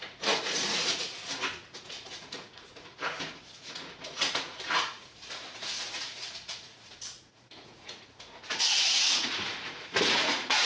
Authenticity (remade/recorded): remade